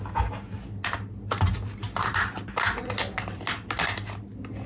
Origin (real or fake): real